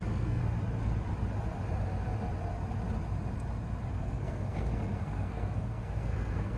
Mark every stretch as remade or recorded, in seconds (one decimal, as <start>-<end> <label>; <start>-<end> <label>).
0.0-0.4 remade; 0.4-3.9 recorded; 3.9-6.6 remade